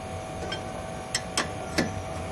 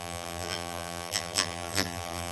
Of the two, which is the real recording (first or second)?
first